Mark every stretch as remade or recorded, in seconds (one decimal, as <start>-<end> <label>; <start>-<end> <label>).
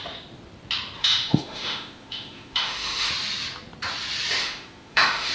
0.0-1.0 recorded; 1.0-3.1 remade; 3.1-4.4 recorded; 4.4-5.3 remade